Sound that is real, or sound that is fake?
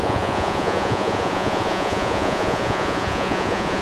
fake